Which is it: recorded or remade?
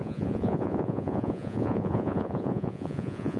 remade